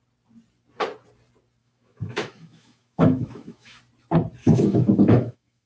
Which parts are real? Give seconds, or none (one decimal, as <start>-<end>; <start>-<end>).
0.0-1.6; 3.8-4.4